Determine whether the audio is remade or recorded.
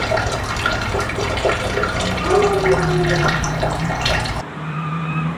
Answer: remade